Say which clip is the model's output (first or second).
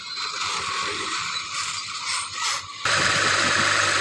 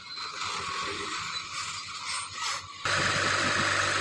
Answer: first